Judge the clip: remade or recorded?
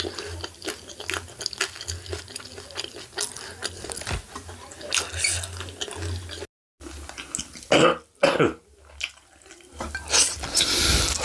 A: recorded